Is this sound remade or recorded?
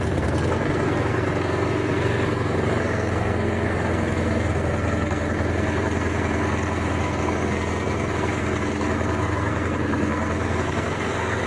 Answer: remade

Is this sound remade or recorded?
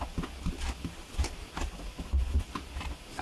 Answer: recorded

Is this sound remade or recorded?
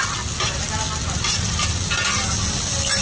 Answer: recorded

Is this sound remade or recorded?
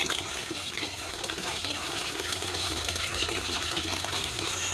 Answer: remade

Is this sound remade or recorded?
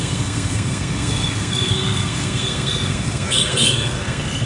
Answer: remade